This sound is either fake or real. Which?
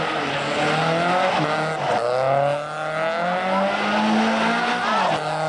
real